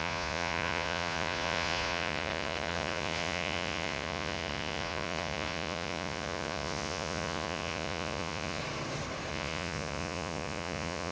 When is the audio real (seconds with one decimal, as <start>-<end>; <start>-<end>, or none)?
8.6-9.3